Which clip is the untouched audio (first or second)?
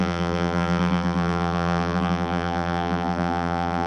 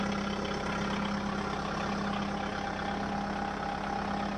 second